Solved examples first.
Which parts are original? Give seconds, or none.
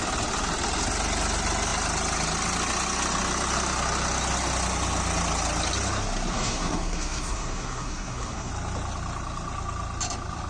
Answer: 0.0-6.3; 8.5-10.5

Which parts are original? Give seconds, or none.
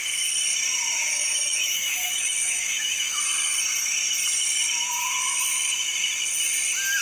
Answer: 0.0-1.0; 3.2-7.0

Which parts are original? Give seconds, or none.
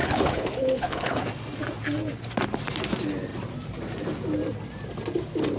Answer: 1.2-5.6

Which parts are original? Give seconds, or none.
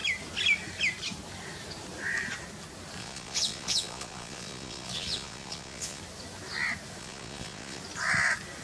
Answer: 0.0-3.0; 6.0-7.0; 7.8-8.6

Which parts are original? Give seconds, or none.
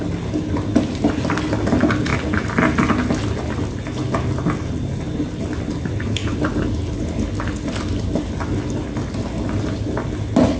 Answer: 0.0-10.6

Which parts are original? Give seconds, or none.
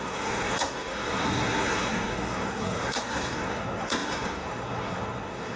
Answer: none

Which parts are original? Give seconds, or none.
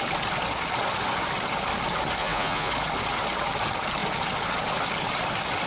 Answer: 0.0-2.2; 2.7-5.7